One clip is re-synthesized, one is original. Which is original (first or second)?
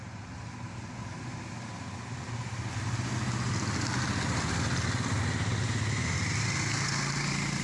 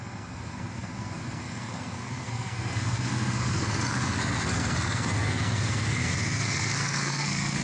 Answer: first